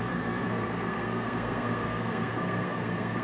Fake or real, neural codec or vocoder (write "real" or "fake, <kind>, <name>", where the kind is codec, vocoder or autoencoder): fake, codec, SNAC